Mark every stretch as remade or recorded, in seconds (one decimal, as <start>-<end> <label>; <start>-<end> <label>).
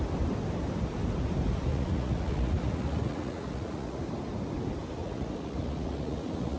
0.0-1.7 recorded; 1.7-4.0 remade; 4.0-5.0 recorded; 5.0-6.6 remade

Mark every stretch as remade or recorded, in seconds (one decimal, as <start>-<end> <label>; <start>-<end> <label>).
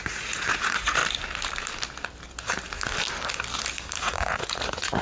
0.0-1.0 remade; 1.0-4.0 recorded; 4.0-5.0 remade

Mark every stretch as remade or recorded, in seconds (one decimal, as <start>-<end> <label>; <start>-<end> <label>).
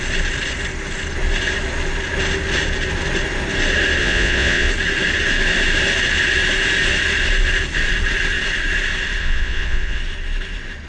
0.0-4.0 recorded; 4.0-4.7 remade; 4.7-9.2 recorded; 9.2-10.0 remade; 10.0-10.9 recorded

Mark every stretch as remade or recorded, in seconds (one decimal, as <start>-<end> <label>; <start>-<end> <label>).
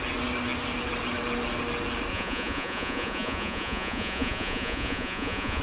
0.0-2.1 recorded; 2.1-5.6 remade